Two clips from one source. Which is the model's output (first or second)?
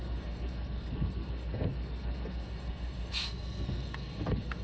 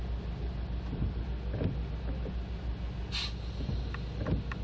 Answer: first